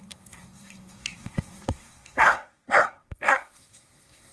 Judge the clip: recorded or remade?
remade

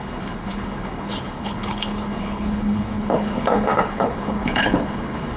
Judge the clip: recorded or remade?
remade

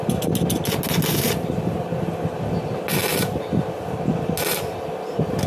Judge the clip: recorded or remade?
recorded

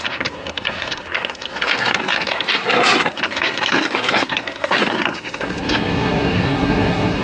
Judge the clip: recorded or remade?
remade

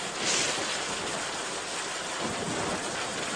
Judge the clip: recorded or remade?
recorded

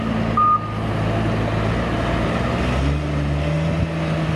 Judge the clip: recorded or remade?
recorded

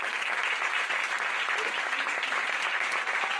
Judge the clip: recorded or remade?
recorded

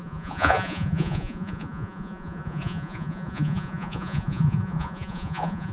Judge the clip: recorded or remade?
remade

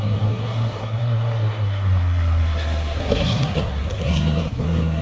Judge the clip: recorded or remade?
remade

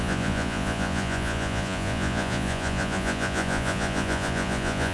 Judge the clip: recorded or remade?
remade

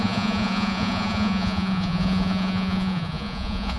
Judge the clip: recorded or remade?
remade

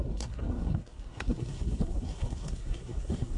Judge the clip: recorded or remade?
remade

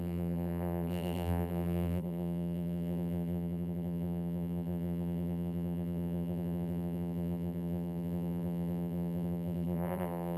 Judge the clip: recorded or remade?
remade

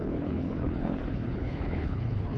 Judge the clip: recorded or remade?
remade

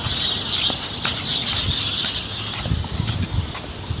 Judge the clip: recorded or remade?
recorded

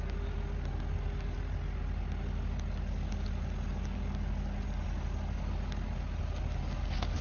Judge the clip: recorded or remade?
recorded